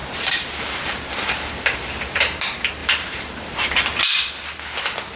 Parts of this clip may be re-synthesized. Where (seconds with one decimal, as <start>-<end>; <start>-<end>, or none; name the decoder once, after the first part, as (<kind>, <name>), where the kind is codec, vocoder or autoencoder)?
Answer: 0.0-2.4 (vocoder, BigVGAN v2); 2.8-3.8